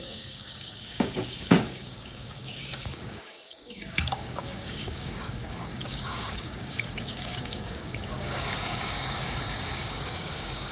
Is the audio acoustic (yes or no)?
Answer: no